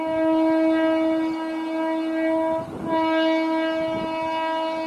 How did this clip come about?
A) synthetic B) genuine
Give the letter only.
B